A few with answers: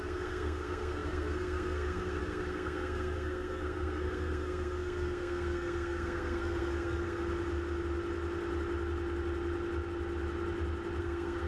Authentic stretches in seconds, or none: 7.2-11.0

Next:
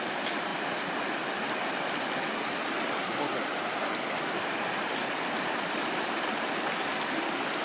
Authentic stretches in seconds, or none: 0.0-7.6

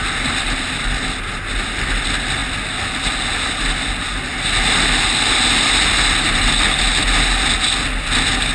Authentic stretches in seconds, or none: 0.0-8.5

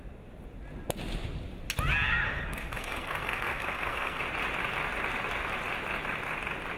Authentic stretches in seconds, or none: 0.0-2.3; 4.2-6.8

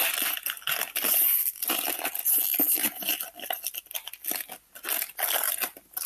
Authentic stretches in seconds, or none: 0.0-6.1